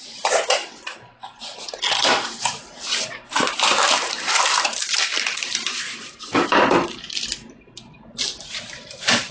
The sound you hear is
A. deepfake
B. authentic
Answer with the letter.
A